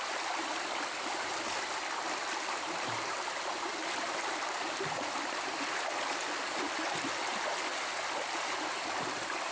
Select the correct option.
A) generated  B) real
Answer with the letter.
B